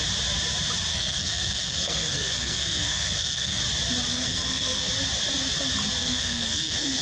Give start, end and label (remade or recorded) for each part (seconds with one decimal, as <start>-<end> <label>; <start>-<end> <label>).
0.0-0.9 recorded; 0.9-3.6 remade; 3.6-4.1 recorded; 4.1-4.9 remade; 4.9-6.0 recorded; 6.0-7.0 remade